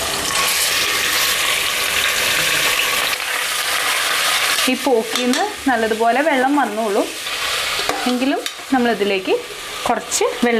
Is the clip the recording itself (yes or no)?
yes